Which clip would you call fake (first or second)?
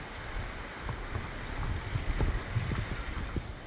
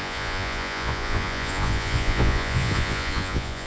second